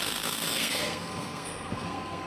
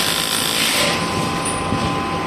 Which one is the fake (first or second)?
first